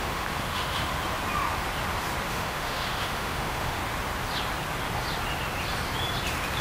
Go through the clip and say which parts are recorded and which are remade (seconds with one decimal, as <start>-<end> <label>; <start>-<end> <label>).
0.0-0.9 remade; 0.9-2.3 recorded; 2.3-3.8 remade; 3.8-6.6 recorded